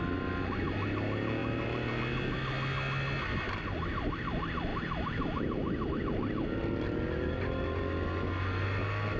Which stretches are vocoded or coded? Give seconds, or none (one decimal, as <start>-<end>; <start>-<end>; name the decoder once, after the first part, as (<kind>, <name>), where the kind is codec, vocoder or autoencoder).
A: none